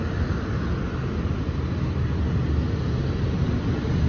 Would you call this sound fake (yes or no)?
no